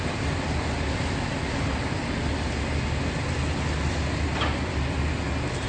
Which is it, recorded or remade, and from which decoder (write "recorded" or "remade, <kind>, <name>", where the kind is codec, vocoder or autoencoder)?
recorded